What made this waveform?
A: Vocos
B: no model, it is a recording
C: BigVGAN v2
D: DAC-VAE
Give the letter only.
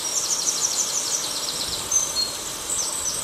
C